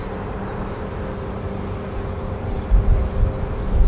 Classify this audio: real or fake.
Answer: real